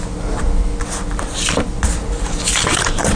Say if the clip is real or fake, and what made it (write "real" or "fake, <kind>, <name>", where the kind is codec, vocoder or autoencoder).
real